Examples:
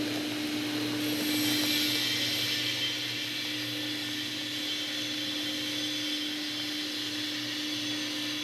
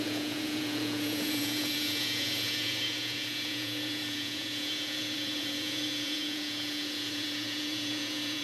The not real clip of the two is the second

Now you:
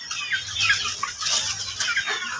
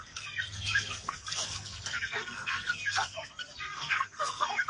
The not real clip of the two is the second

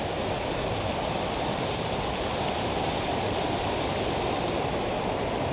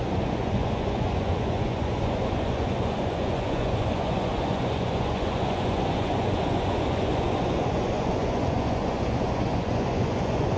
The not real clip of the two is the second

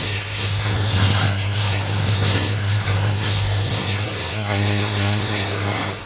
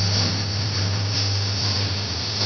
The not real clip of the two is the first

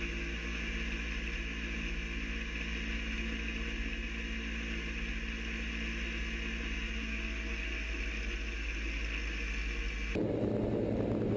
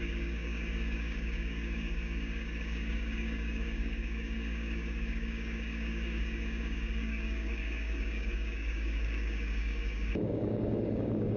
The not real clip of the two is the second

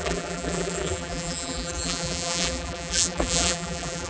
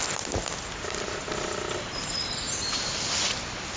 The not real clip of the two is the first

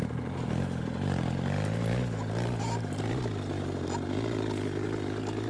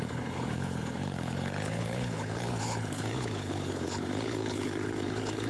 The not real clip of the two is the second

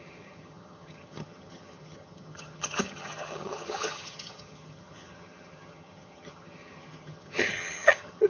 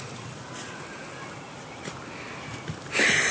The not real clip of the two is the first